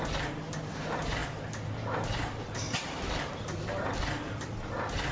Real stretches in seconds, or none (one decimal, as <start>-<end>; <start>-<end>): 0.0-1.2; 3.9-5.1